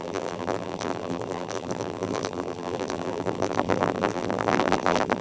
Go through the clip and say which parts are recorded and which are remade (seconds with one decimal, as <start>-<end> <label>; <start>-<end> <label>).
0.0-5.2 remade